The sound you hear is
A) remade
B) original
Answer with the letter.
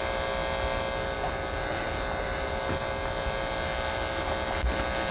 B